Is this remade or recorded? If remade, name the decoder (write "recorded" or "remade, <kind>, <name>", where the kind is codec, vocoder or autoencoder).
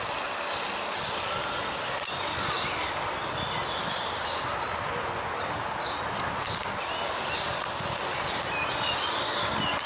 recorded